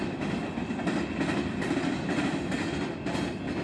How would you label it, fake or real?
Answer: real